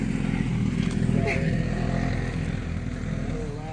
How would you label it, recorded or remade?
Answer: recorded